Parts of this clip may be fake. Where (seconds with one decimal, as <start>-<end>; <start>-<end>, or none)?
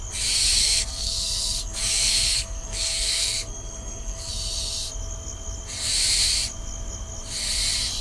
0.6-4.3